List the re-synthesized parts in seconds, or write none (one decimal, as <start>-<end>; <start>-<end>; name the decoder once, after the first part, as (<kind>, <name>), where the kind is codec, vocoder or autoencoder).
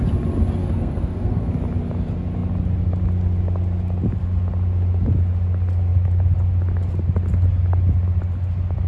0.6-1.5 (codec, SNAC)